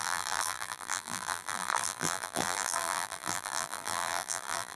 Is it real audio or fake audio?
fake